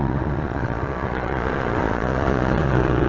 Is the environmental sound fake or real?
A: fake